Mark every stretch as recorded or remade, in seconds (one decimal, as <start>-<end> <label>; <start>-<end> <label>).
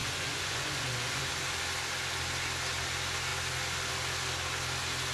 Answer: 0.0-1.2 remade; 1.2-5.1 recorded